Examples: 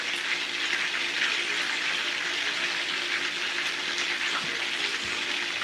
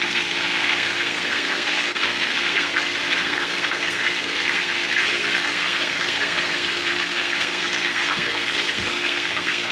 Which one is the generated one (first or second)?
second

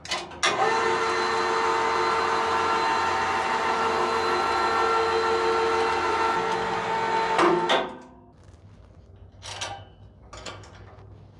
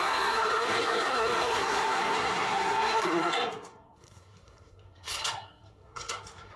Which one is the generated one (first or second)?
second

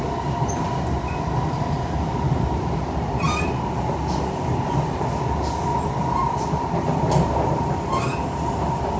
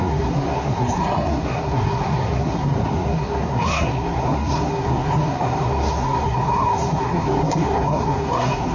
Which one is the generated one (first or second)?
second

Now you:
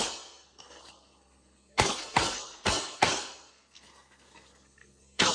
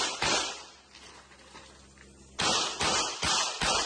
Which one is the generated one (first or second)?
first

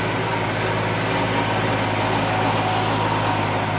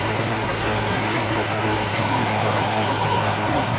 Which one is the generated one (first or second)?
second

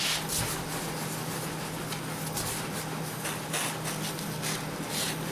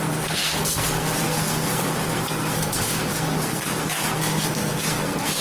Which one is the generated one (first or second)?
second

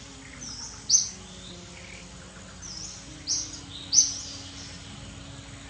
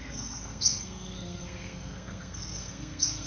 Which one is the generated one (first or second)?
second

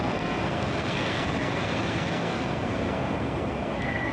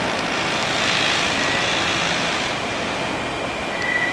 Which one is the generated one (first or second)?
first